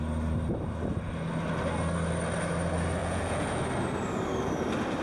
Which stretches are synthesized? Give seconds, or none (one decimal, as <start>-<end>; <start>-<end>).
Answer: 3.0-3.6